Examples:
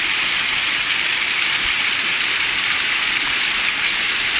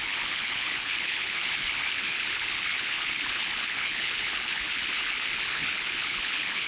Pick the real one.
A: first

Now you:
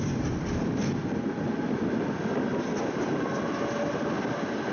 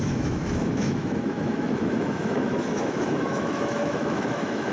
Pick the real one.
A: first